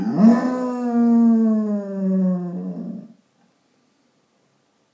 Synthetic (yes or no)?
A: no